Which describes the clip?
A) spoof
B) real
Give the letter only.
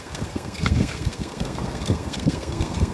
A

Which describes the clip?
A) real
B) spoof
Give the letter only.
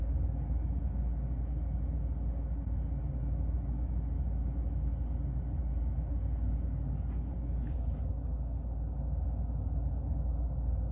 A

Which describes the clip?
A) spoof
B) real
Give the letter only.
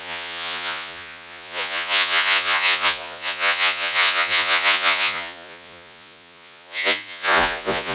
A